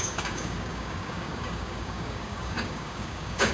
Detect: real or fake fake